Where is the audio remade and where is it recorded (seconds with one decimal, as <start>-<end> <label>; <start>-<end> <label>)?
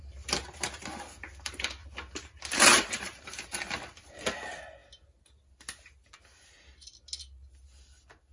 0.0-1.8 recorded; 1.8-3.6 remade; 3.6-8.3 recorded